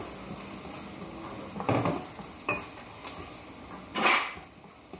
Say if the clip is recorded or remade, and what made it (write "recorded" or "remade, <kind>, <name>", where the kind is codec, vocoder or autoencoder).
recorded